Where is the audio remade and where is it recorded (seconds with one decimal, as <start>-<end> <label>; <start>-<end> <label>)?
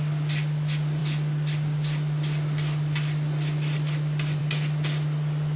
0.0-5.6 recorded